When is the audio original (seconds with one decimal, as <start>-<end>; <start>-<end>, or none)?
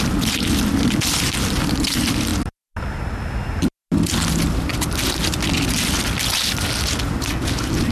0.0-7.9